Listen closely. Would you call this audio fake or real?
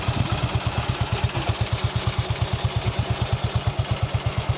real